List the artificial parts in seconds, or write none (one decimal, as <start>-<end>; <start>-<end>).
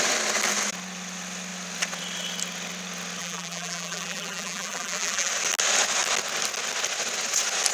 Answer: 3.2-5.3